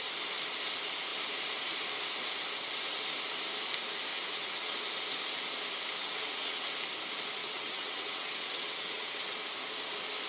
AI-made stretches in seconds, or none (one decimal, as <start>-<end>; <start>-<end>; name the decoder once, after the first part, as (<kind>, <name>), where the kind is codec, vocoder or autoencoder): 4.1-4.8 (vocoder, WaveNeXt); 6.0-6.7; 7.4-9.2